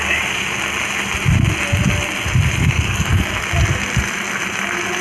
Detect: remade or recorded recorded